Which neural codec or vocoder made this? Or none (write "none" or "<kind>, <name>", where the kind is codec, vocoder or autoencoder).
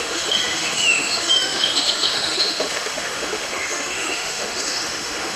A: autoencoder, DAC-VAE